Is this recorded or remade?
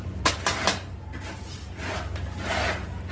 recorded